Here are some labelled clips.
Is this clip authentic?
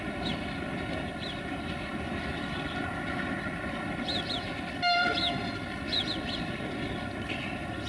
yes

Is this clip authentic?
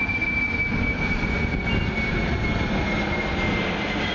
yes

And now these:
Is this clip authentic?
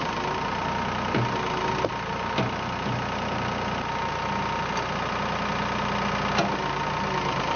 yes